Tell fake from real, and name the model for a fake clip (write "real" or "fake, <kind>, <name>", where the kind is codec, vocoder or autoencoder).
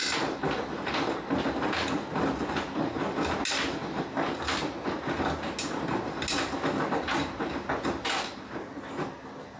real